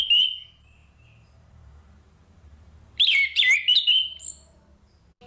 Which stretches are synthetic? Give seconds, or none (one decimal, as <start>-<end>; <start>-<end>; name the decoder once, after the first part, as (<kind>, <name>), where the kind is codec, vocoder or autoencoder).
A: 0.8-3.9 (vocoder, BigVGAN v2)